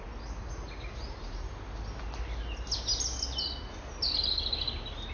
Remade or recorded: recorded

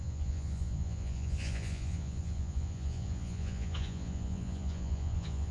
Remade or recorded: remade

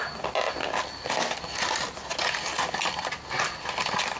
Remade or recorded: recorded